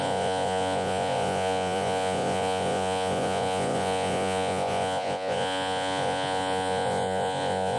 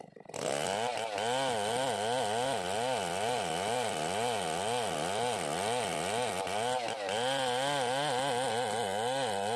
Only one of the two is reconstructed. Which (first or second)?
first